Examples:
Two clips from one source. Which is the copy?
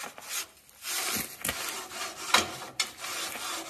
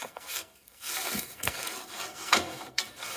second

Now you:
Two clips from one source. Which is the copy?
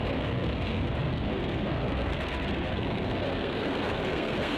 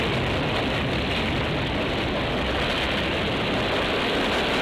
first